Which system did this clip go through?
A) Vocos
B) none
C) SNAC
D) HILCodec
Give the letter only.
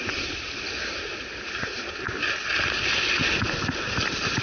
B